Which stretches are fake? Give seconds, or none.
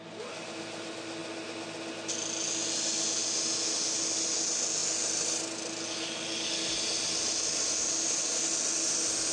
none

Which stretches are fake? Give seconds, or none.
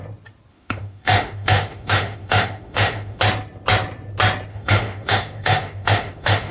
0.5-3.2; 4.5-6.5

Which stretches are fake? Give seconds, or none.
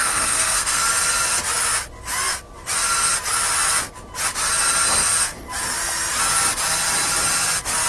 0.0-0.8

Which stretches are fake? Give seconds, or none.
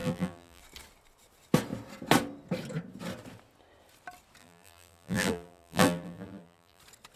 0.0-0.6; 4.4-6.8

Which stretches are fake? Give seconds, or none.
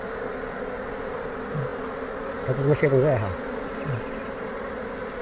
none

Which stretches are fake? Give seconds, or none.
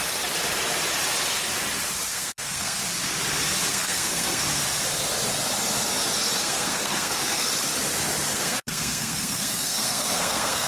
2.1-2.8; 3.7-4.4; 6.4-7.5; 8.3-10.7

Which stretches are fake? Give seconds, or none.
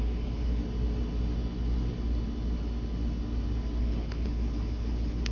0.0-0.6; 3.8-5.3